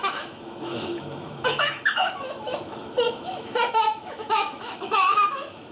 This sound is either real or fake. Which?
fake